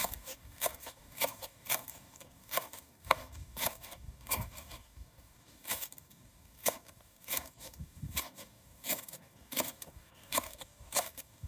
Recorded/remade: remade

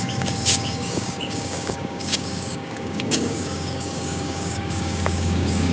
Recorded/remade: remade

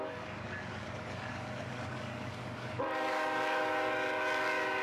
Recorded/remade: remade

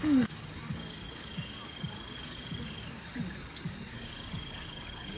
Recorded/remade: remade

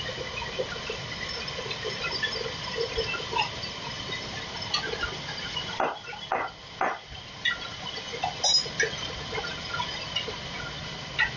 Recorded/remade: recorded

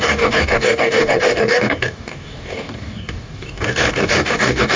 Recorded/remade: remade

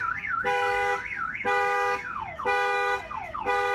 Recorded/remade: remade